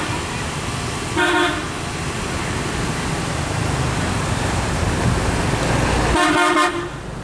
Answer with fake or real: real